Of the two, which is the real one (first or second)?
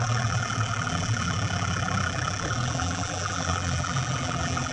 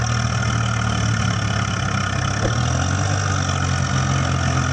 second